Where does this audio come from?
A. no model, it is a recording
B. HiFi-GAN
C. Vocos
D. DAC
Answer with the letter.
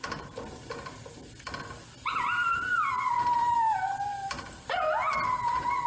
A